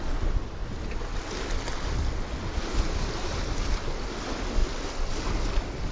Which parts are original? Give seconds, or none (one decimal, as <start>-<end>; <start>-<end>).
0.0-5.9